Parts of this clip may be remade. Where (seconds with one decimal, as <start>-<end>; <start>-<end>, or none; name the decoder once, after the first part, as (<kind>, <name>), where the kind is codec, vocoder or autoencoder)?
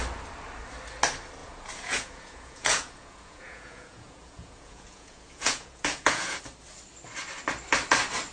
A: 1.4-6.4 (vocoder, Vocos)